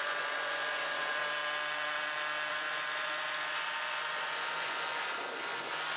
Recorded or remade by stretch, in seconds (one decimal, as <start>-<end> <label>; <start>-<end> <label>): 0.0-1.2 remade; 1.2-2.5 recorded; 2.5-6.0 remade